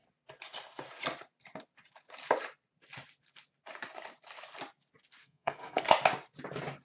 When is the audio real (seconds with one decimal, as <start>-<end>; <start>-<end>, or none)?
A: 0.0-5.2; 5.8-6.8